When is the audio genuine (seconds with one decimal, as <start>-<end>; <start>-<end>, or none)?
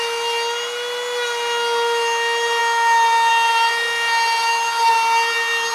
0.0-5.7